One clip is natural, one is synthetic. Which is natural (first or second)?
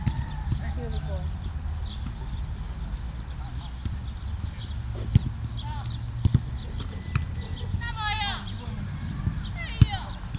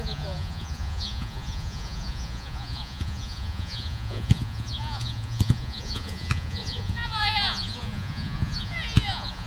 first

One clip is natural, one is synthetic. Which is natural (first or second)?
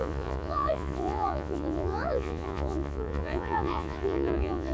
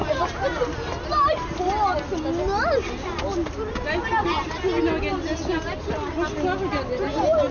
second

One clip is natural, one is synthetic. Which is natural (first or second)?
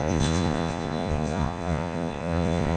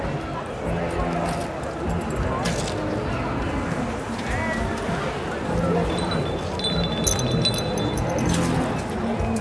second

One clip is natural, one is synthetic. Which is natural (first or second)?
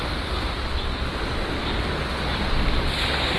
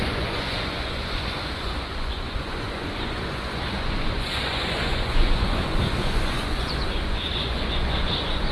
first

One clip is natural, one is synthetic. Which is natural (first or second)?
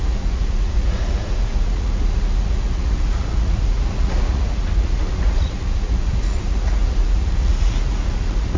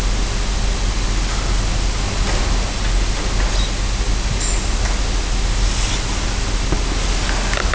second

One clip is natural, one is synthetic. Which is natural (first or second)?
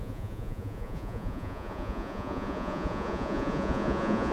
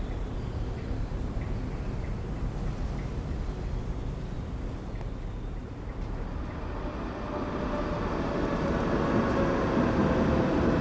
second